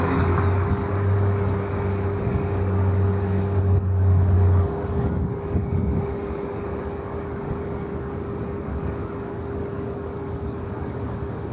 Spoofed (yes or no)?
yes